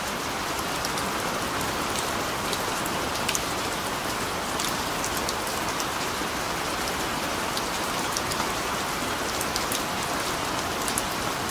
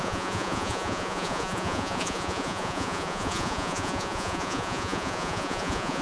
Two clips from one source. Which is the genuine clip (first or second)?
first